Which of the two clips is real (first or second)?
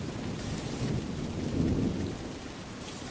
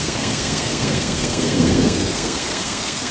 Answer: first